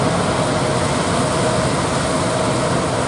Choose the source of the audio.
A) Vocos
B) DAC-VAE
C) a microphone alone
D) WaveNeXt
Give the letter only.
C